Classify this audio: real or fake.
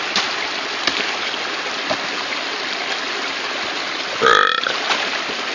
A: real